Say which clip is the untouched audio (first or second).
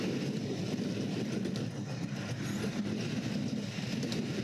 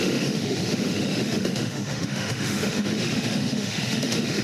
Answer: first